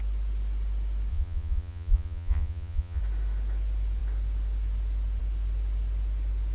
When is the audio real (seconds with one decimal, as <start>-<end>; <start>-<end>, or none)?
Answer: 0.0-1.1; 3.0-6.5